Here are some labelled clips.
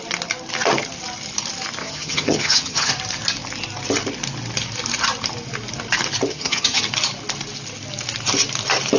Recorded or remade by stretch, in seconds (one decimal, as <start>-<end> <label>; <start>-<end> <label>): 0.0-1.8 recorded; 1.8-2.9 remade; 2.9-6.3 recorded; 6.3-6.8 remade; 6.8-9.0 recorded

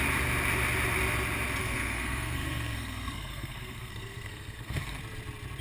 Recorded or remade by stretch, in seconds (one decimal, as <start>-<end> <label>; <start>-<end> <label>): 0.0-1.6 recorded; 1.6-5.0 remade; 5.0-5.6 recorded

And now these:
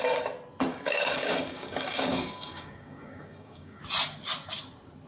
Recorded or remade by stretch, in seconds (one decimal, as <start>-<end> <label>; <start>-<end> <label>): 0.0-0.7 recorded; 0.7-3.8 remade; 3.8-5.1 recorded

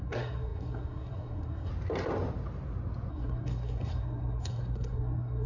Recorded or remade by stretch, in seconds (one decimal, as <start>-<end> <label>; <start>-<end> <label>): 0.0-1.7 remade; 1.7-3.1 recorded; 3.1-5.5 remade

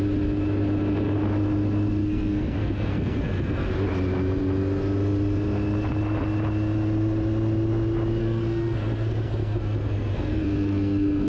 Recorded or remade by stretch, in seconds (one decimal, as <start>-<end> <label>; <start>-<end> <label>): 0.0-2.0 recorded; 2.0-3.7 remade; 3.7-8.2 recorded; 8.2-11.3 remade

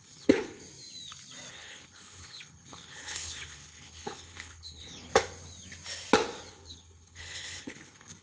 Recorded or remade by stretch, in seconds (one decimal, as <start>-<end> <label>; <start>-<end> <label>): 0.0-0.6 remade; 0.6-1.5 recorded; 1.5-5.1 remade; 5.1-6.5 recorded; 6.5-8.2 remade

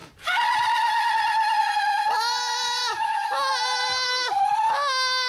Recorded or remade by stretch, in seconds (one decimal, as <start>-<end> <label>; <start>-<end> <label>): 0.0-2.8 recorded; 2.8-3.5 remade; 3.5-5.3 recorded